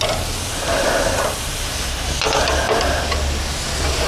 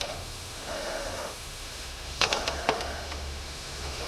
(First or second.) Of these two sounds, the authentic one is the first